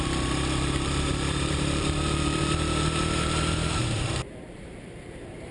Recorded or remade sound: remade